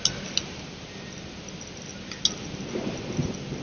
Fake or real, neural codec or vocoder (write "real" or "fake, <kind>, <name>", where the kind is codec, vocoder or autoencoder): real